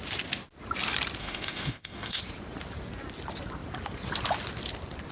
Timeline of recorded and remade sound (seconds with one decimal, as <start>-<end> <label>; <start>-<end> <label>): 0.0-1.2 recorded; 1.2-2.2 remade; 2.2-5.1 recorded